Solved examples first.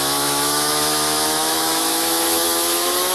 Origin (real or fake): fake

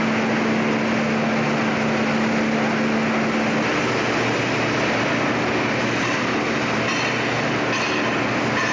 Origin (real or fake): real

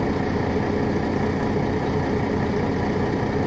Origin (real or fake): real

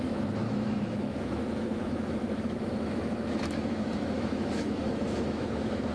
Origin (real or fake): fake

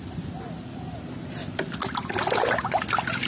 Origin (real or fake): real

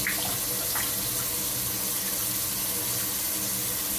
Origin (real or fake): real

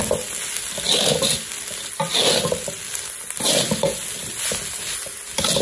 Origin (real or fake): real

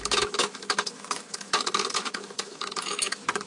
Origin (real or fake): fake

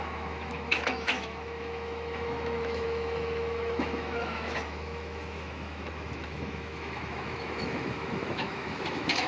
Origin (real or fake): fake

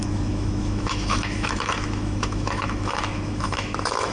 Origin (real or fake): fake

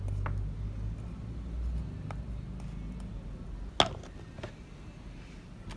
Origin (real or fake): real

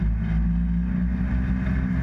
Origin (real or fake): real